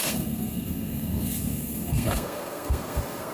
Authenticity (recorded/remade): remade